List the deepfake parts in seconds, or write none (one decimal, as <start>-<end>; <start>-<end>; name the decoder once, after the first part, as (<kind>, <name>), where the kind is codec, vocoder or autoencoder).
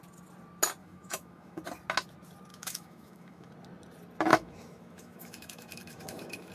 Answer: 0.8-1.6 (autoencoder, DAC-VAE); 2.5-3.5; 4.3-6.5